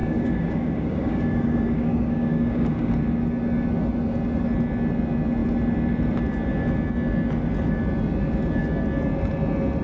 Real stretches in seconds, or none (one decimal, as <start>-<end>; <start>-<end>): 2.9-9.8